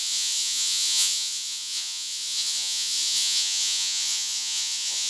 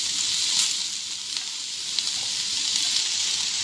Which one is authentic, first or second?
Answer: second